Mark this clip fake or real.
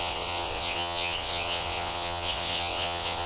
fake